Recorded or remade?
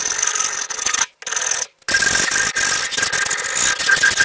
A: recorded